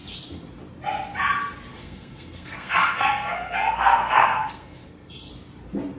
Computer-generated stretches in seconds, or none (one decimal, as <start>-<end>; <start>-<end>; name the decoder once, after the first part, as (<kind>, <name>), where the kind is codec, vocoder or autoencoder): 1.7-5.3 (codec, SNAC)